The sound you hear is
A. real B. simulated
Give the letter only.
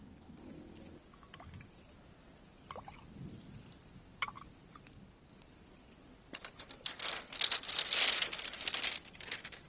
A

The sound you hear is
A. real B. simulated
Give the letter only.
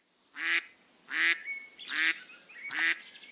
A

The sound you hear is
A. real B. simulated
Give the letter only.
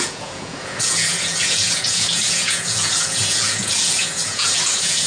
B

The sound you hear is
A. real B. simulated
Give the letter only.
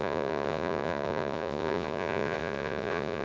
B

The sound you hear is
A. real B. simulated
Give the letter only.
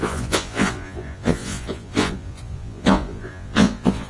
B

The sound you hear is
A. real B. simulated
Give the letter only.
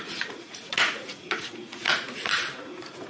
B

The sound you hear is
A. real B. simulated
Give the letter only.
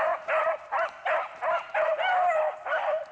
A